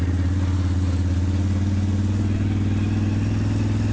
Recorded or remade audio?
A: recorded